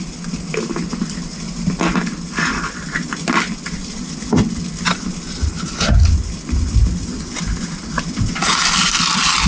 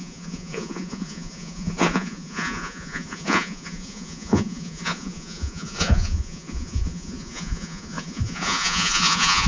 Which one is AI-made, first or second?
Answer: second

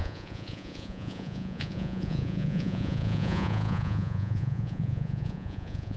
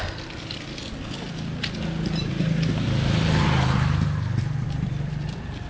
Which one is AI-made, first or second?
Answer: first